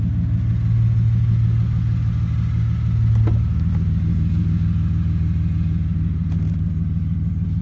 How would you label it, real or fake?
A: real